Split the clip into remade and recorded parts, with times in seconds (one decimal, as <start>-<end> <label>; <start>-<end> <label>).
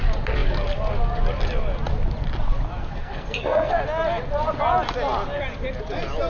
0.0-2.8 recorded; 2.8-3.8 remade; 3.8-6.3 recorded